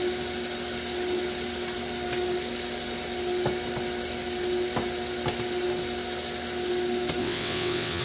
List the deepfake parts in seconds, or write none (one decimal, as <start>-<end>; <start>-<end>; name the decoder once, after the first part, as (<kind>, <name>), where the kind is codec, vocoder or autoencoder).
7.2-8.0 (vocoder, WaveNeXt)